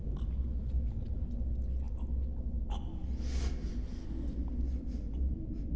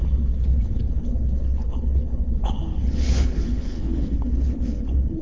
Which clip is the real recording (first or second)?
first